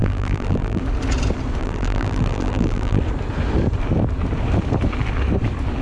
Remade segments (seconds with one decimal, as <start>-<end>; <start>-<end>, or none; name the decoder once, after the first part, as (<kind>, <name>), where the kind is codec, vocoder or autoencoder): 0.0-0.8 (vocoder, BigVGAN v2); 1.6-3.0